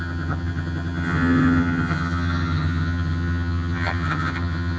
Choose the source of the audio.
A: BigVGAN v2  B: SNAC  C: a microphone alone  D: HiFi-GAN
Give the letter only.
D